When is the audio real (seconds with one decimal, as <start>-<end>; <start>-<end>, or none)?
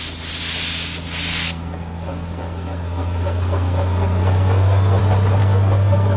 0.0-1.3; 5.0-5.4